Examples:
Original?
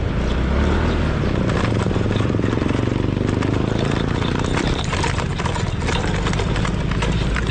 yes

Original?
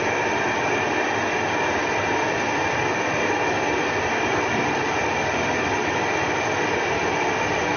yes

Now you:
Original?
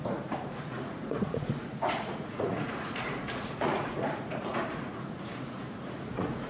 no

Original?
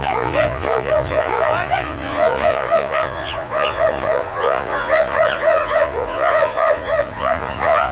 no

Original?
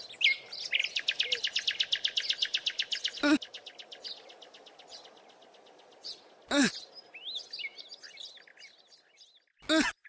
yes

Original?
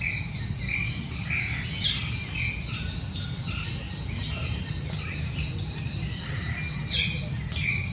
yes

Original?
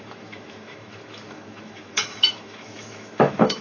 no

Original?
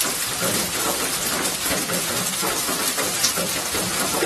yes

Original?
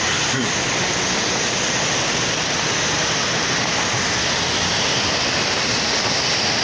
yes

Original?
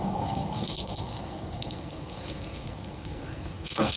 no